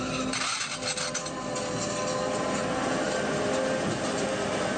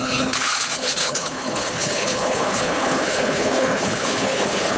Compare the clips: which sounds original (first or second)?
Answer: first